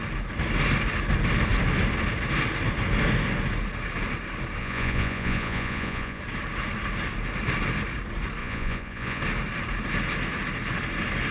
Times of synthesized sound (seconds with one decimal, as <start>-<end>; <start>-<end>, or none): 4.6-6.2; 8.4-9.2